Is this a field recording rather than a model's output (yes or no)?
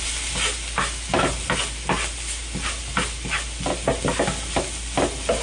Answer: yes